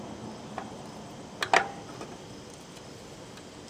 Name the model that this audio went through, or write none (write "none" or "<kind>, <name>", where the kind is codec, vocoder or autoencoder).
none